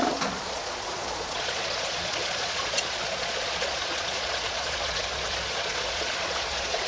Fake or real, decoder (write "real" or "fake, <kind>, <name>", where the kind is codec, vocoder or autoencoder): fake, vocoder, Vocos